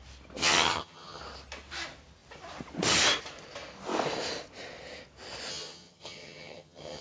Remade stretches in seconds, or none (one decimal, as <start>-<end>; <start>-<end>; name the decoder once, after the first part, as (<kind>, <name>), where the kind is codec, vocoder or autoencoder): 0.4-1.2 (vocoder, HiFi-GAN); 5.5-7.0